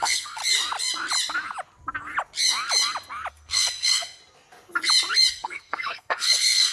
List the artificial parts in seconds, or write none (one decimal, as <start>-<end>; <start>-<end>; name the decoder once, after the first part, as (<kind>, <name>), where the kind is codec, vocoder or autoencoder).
0.0-0.4 (codec, SNAC); 3.3-4.2; 5.3-6.7